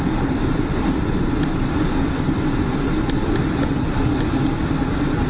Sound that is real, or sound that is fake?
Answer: real